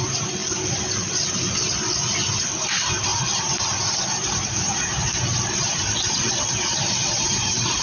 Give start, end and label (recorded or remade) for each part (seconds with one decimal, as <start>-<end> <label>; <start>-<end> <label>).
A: 0.0-0.4 remade; 0.4-2.4 recorded; 2.4-7.8 remade